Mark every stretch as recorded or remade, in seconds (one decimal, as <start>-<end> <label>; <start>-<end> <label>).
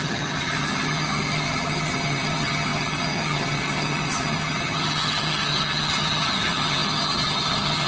0.0-7.9 remade